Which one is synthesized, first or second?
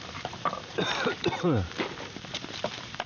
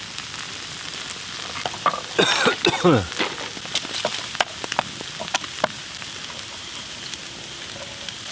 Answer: first